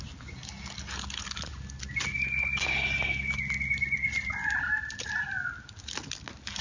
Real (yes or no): yes